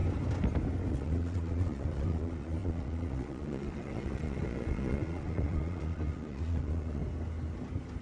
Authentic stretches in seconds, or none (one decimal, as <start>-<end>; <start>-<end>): 0.0-0.9; 7.0-8.0